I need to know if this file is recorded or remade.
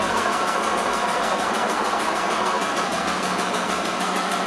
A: remade